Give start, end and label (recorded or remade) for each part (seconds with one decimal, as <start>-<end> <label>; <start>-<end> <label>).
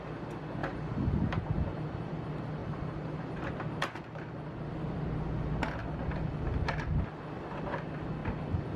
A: 0.0-0.6 recorded; 0.6-1.4 remade; 1.4-2.6 recorded; 2.6-3.5 remade; 3.5-8.8 recorded